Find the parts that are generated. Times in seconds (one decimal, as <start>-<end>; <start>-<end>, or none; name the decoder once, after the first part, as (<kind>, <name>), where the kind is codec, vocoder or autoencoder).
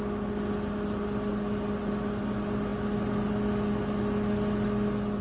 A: none